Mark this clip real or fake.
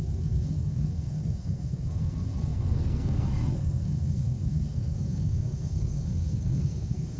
fake